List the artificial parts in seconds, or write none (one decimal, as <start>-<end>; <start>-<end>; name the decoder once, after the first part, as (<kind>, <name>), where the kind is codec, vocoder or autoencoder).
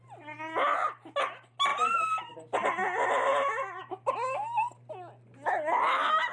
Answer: none